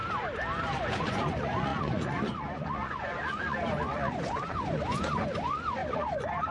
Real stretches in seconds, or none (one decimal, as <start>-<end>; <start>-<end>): 0.0-0.9

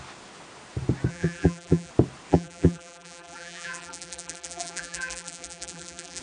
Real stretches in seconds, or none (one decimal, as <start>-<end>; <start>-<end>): 0.0-1.1; 1.9-2.3